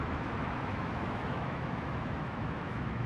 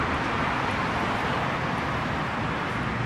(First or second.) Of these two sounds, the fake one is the first